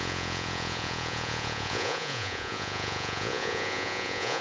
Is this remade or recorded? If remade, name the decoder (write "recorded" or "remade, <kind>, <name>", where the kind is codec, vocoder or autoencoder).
remade, vocoder, Vocos